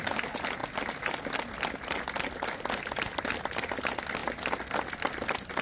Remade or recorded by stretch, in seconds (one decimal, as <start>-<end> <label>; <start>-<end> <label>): 0.0-5.6 recorded